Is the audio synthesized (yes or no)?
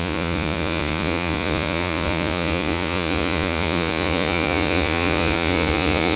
yes